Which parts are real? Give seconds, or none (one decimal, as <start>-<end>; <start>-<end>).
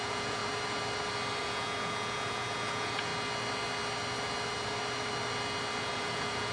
0.4-1.4; 3.1-5.8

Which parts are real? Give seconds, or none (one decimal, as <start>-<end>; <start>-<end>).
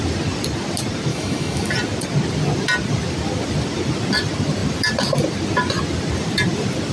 0.0-1.1; 1.7-6.9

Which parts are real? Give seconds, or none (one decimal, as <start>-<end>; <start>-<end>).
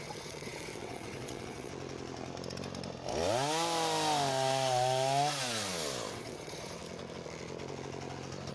1.7-6.1; 6.8-8.5